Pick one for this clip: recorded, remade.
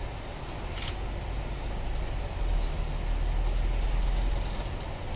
recorded